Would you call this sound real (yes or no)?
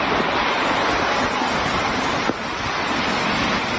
yes